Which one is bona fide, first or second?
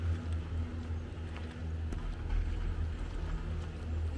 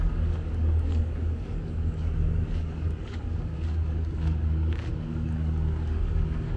first